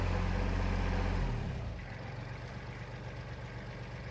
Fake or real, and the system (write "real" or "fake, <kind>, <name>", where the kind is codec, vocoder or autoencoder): real